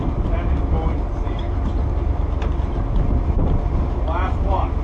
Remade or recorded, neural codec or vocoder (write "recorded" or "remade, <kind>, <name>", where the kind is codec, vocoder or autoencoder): recorded